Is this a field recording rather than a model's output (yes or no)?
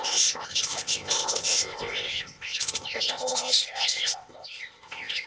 no